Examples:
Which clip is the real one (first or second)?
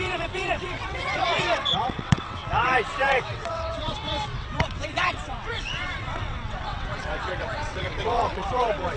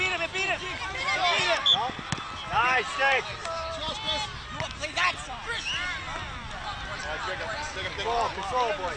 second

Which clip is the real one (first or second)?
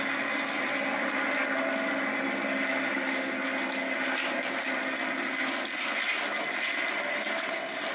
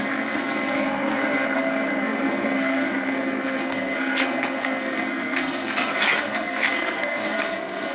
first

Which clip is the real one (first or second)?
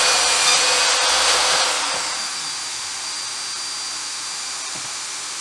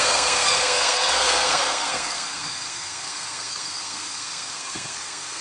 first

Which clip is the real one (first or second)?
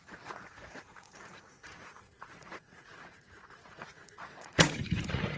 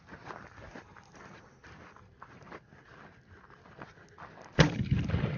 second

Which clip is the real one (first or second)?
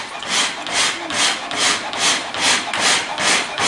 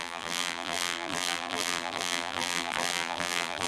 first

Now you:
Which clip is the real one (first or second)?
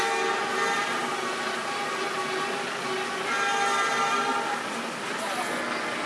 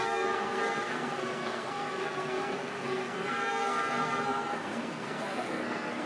first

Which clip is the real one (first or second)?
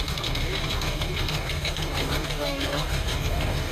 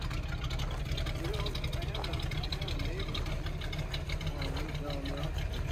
second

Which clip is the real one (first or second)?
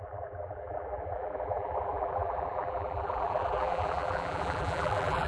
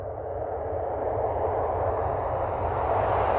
second